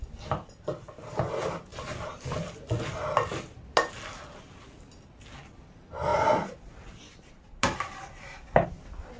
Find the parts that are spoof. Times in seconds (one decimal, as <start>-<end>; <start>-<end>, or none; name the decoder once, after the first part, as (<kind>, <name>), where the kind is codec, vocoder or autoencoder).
none